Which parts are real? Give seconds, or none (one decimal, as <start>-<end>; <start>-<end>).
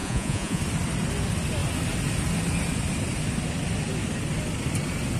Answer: 0.6-5.2